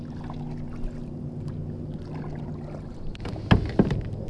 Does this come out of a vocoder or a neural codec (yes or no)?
no